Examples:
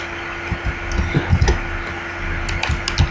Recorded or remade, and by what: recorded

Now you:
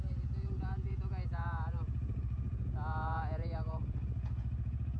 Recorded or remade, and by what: remade, vocoder, Vocos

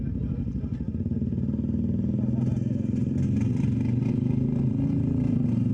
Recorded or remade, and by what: recorded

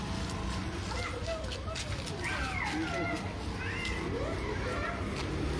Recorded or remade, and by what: recorded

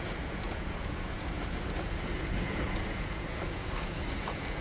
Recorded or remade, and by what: remade, vocoder, Vocos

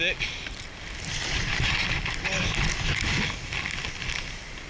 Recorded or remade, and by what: recorded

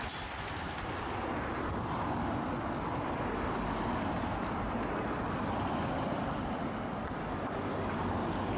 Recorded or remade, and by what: recorded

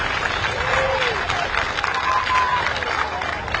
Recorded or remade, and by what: recorded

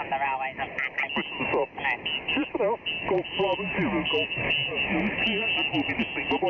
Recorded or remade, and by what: recorded